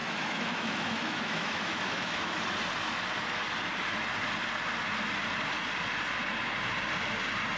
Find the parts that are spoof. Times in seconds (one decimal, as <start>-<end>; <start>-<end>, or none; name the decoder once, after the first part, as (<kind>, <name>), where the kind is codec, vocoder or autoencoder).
0.0-2.4 (autoencoder, DAC-VAE)